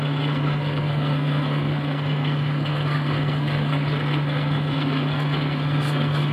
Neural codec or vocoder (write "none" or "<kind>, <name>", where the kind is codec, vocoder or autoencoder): codec, SNAC